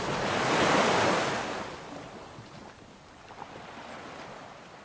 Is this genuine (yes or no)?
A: yes